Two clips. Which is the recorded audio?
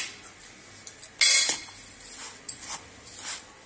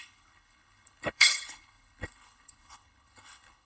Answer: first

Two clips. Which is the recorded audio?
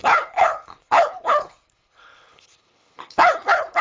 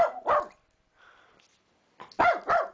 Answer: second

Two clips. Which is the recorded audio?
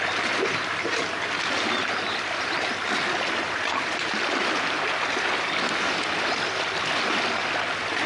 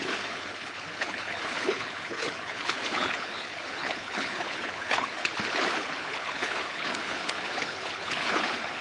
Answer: first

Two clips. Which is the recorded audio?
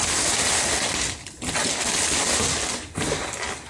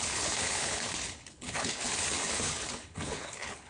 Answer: first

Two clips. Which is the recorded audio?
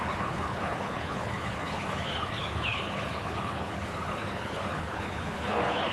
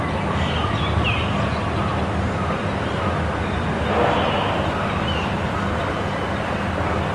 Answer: second